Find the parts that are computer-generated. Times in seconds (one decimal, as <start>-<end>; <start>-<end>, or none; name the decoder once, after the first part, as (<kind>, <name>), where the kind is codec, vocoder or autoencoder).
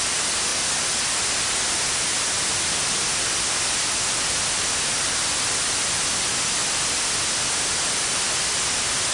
none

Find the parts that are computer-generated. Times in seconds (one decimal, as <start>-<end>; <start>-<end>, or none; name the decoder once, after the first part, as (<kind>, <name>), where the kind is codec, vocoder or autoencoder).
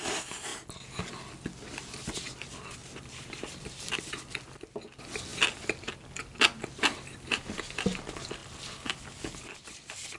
2.8-4.1 (vocoder, BigVGAN v2)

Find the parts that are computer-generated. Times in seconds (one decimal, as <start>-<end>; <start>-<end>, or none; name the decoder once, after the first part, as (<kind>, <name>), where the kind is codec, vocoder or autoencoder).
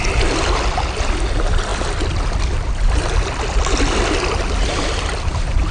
none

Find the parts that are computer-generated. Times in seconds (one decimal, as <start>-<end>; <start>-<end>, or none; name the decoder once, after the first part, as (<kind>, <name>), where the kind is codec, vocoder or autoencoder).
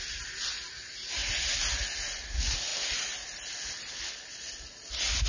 none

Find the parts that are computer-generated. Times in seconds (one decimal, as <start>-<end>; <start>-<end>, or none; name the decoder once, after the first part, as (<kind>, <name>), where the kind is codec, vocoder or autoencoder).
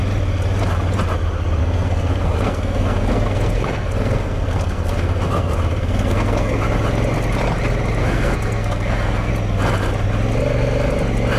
1.6-6.6 (codec, SNAC); 8.0-9.3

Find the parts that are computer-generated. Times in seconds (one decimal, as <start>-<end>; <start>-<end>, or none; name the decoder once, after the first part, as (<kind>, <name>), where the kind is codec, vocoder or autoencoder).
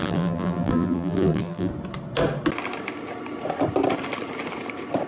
0.0-1.7 (vocoder, BigVGAN v2)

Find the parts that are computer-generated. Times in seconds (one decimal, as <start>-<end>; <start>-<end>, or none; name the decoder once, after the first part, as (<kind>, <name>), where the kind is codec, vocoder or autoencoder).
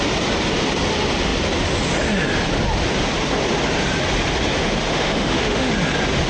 4.9-5.7 (autoencoder, DAC-VAE)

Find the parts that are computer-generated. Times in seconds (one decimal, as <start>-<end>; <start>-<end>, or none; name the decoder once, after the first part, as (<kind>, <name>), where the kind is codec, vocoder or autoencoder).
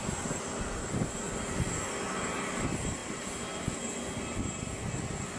none